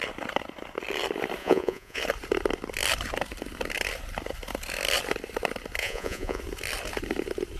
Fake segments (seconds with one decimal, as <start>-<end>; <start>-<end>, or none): 1.4-2.0; 5.8-6.4

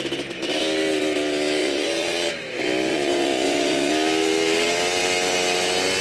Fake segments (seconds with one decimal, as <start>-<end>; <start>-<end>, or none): 1.6-2.3; 2.9-3.9